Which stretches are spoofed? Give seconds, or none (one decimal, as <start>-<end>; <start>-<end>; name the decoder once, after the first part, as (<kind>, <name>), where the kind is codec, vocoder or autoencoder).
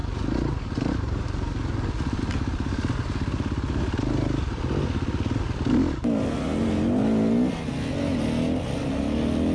none